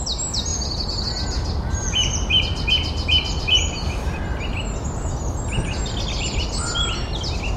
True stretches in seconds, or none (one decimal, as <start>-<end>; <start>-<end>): 0.0-7.6